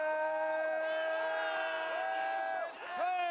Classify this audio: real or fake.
real